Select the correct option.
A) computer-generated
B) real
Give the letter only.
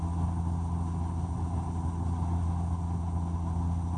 B